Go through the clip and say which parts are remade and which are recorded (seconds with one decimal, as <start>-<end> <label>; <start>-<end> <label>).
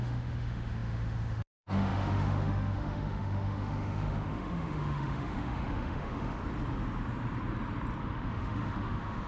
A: 0.0-6.4 remade; 6.4-8.0 recorded; 8.0-9.3 remade